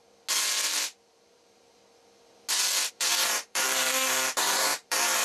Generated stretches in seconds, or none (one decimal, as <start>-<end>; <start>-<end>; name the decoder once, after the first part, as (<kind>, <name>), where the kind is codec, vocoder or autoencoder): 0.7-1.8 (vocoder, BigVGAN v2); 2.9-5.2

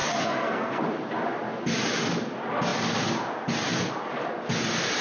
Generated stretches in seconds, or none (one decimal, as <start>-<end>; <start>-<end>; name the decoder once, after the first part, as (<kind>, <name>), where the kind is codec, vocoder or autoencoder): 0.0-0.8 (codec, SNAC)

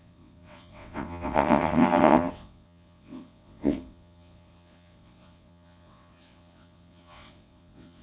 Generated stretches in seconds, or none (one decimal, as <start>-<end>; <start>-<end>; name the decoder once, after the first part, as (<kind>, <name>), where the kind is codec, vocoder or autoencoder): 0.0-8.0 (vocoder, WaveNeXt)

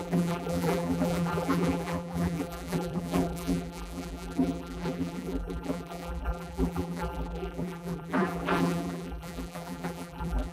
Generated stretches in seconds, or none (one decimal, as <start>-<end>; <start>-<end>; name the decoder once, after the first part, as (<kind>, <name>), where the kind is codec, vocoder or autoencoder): 0.0-10.5 (vocoder, BigVGAN v2)